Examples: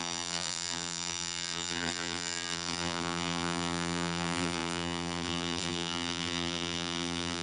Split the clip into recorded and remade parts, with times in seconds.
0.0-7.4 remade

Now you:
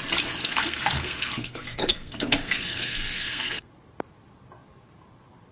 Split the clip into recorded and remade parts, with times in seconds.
0.0-0.4 recorded; 0.4-3.7 remade; 3.7-5.5 recorded

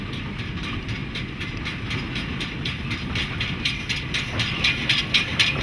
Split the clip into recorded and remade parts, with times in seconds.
0.0-5.6 recorded

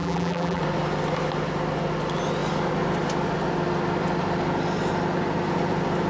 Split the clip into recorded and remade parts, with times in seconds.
0.0-0.6 remade; 0.6-6.1 recorded

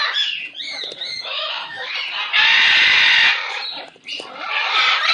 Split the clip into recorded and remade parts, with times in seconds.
0.0-1.1 recorded; 1.1-1.9 remade; 1.9-5.1 recorded

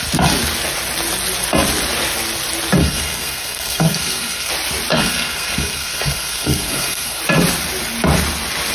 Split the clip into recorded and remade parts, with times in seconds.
0.0-2.8 recorded; 2.8-4.5 remade; 4.5-4.9 recorded; 4.9-7.2 remade; 7.2-8.7 recorded

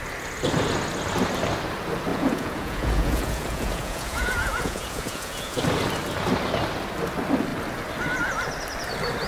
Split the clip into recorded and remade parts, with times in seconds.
0.0-2.1 recorded; 2.1-5.6 remade; 5.6-9.3 recorded

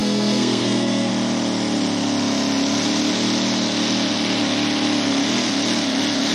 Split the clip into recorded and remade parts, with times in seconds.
0.0-1.1 remade; 1.1-6.3 recorded